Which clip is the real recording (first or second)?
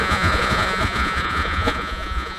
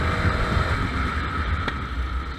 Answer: second